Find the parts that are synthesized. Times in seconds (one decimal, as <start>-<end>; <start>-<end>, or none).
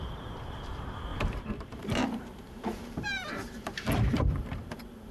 0.0-5.1